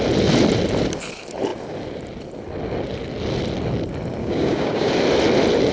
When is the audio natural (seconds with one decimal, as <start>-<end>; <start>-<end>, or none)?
0.0-4.2; 4.9-5.7